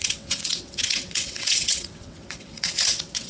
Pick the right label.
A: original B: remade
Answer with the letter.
B